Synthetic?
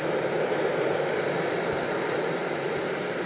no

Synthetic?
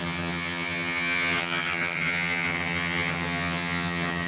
yes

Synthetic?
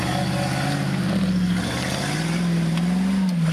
no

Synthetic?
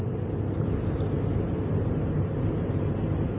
no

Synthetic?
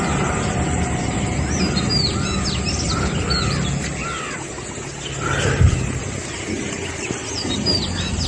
no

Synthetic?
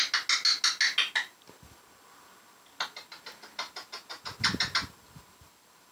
no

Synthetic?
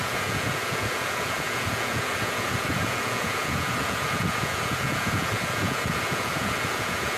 yes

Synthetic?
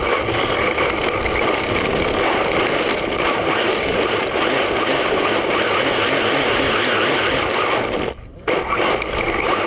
no